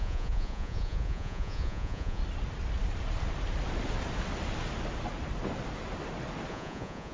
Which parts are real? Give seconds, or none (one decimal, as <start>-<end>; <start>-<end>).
2.2-6.5

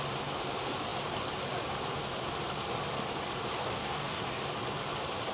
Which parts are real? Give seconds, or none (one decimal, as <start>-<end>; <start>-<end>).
0.0-3.6; 4.2-5.3

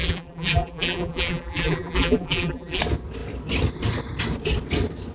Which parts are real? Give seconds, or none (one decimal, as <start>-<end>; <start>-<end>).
2.8-5.1

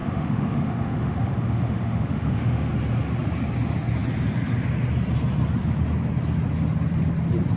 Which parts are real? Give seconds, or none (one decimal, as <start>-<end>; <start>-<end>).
2.7-7.6

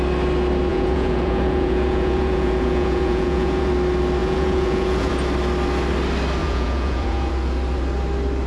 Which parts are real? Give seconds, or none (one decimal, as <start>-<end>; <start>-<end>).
0.0-0.7; 3.7-4.2; 5.1-6.4; 7.3-8.5

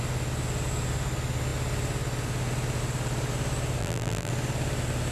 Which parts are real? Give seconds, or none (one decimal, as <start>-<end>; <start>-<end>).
0.0-3.8; 4.3-5.1